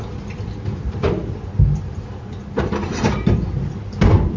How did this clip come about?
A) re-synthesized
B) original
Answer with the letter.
A